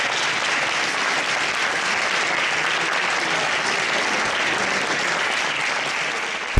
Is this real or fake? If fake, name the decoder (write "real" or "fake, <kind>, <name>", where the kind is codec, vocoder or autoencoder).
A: real